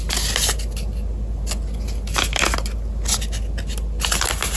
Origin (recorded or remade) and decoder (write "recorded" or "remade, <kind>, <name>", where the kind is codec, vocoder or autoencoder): recorded